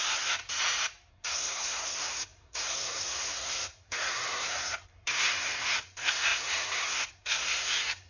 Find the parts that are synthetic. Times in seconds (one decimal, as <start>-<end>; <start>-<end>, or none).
0.0-0.4; 1.1-8.1